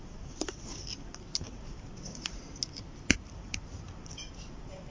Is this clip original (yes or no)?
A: yes